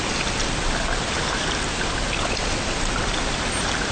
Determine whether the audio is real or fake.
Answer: real